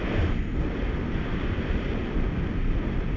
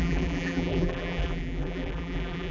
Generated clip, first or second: second